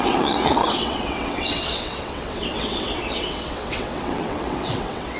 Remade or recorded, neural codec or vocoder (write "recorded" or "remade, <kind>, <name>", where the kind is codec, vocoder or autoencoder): remade, vocoder, WaveNeXt